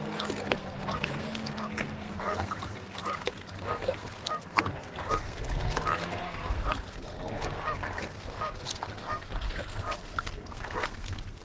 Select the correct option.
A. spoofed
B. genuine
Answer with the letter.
A